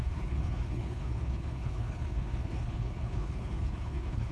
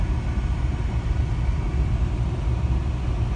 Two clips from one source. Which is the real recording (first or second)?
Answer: second